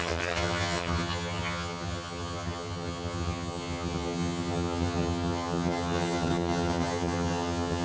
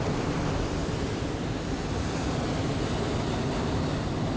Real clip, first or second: second